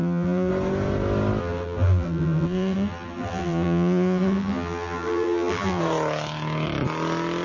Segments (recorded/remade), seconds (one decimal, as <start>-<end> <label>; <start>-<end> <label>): 0.0-0.5 remade; 0.5-1.4 recorded; 1.4-5.8 remade; 5.8-7.4 recorded